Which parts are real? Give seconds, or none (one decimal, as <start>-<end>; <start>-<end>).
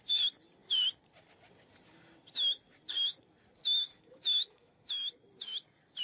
0.0-3.9; 5.1-6.0